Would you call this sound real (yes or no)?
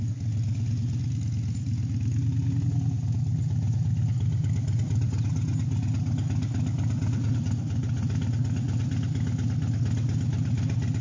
yes